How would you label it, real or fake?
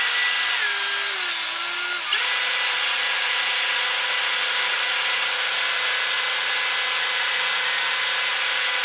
real